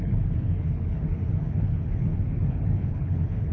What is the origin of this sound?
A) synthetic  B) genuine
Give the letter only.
A